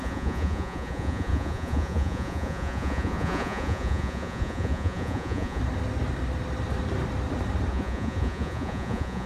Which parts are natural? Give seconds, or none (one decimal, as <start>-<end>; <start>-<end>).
5.6-7.7